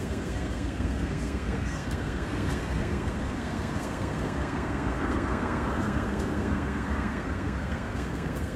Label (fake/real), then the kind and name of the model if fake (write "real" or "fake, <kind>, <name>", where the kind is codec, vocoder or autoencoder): fake, codec, SNAC